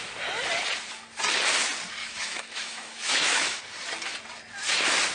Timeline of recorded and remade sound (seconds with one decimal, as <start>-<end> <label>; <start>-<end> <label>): 0.0-2.0 recorded; 2.0-3.6 remade; 3.6-5.1 recorded